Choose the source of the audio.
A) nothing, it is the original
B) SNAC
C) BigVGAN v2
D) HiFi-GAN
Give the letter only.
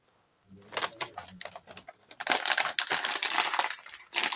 A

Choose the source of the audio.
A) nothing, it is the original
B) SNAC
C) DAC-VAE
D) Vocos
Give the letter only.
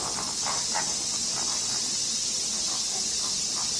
A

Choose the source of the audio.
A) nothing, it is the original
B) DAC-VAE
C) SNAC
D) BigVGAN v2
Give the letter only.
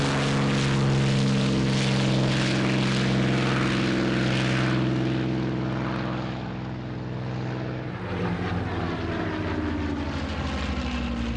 A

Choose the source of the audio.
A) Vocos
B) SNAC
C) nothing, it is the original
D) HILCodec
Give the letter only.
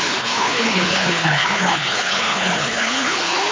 D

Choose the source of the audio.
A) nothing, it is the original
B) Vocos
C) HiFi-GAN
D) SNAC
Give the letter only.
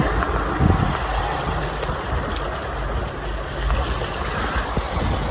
A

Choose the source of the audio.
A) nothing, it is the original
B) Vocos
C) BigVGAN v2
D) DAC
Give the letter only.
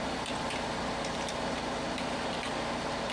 A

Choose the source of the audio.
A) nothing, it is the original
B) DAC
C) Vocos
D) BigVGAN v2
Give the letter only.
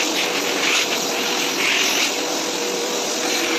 D